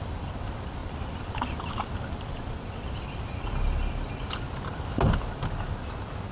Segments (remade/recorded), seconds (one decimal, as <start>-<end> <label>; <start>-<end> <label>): 0.0-6.3 recorded